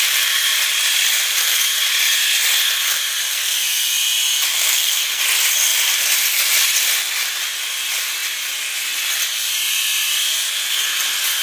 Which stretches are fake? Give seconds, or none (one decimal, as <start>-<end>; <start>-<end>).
3.3-3.9; 4.5-5.2